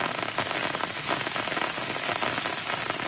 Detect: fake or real real